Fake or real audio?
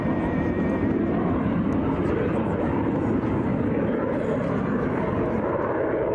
real